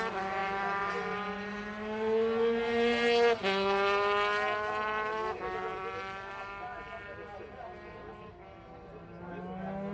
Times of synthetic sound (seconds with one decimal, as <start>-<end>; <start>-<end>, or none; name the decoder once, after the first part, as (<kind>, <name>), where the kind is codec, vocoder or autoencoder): none